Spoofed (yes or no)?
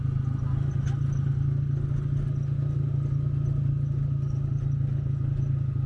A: no